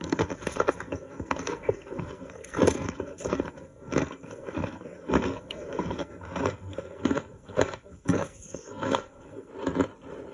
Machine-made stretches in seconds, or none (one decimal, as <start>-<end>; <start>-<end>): 0.0-9.5